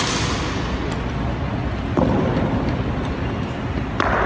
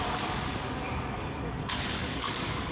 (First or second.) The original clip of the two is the first